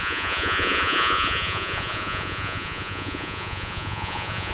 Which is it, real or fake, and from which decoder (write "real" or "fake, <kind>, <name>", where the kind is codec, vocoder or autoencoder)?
fake, vocoder, Vocos